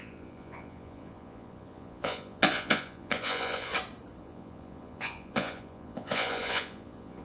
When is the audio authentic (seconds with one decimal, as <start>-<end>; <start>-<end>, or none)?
3.7-4.2